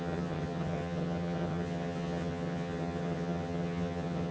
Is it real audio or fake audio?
fake